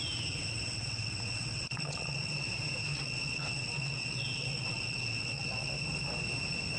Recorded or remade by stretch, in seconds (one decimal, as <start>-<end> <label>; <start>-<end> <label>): 0.0-0.5 recorded; 0.5-2.5 remade; 2.5-2.9 recorded; 2.9-5.7 remade; 5.7-6.8 recorded